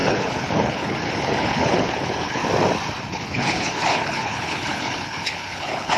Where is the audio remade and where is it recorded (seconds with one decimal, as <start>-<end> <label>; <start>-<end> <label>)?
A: 0.0-2.4 remade; 2.4-3.1 recorded; 3.1-6.0 remade